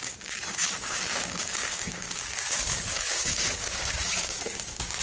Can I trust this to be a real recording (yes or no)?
no